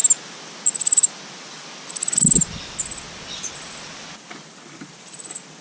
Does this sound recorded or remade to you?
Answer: recorded